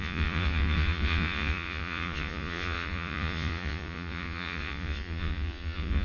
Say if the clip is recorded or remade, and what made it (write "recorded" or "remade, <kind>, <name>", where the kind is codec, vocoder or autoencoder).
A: remade, vocoder, Vocos